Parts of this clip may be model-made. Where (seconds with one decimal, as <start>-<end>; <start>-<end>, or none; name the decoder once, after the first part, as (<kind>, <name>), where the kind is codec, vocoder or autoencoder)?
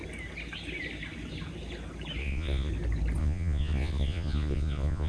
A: 2.2-2.7 (vocoder, Vocos); 3.2-5.1